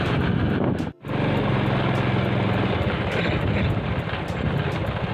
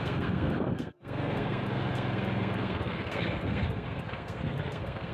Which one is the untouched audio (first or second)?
first